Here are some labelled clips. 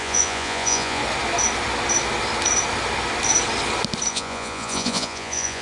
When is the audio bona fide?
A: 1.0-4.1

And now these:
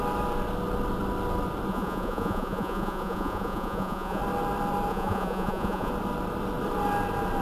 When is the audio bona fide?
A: 0.0-1.7; 4.2-4.9; 5.9-7.4

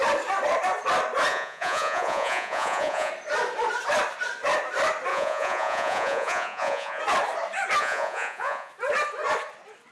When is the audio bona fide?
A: 0.0-1.3; 3.1-5.1; 7.0-7.8; 8.7-9.9

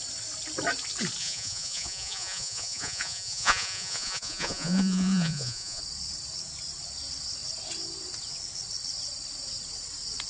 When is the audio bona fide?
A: 0.0-1.2; 5.8-10.3

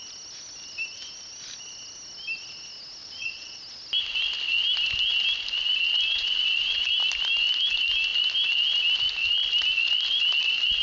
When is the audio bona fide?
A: 0.0-3.0; 3.6-6.1; 6.9-10.8

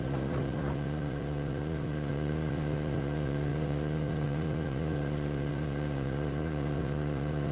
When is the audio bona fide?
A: none

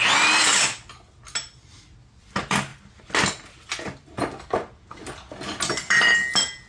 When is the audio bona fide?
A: 0.0-6.7